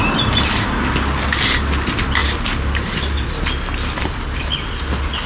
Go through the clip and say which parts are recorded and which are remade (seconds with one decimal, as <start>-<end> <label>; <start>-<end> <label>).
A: 0.0-5.3 recorded